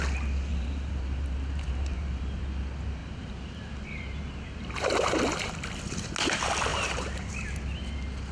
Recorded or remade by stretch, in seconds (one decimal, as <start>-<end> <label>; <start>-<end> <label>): 0.0-0.5 recorded; 0.5-2.4 remade; 2.4-3.0 recorded; 3.0-5.8 remade; 5.8-6.7 recorded; 6.7-7.3 remade; 7.3-8.3 recorded